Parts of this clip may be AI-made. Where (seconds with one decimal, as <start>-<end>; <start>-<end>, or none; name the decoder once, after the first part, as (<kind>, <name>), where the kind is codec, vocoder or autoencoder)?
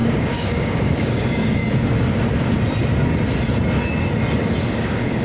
0.0-1.6 (codec, DAC); 4.7-5.2